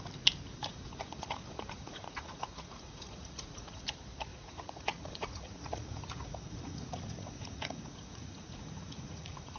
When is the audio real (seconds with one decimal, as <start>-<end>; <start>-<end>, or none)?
0.0-0.6; 3.8-4.3